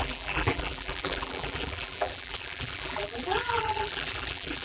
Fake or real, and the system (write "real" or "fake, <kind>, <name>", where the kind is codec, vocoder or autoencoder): fake, vocoder, BigVGAN v2